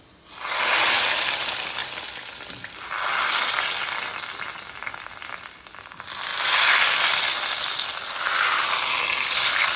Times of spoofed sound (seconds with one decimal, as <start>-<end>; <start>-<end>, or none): none